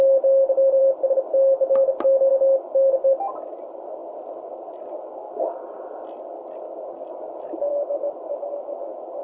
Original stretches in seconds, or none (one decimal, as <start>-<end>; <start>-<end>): 0.0-9.2